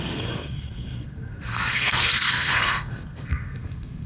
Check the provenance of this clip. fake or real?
fake